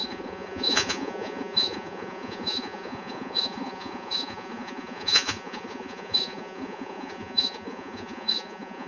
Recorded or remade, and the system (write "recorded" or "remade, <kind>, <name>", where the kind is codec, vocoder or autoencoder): remade, vocoder, Vocos